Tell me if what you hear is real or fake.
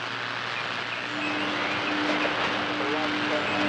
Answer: real